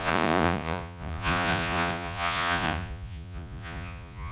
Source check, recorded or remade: remade